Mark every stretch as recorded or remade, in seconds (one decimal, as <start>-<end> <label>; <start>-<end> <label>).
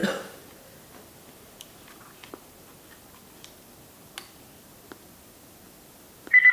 0.0-6.5 recorded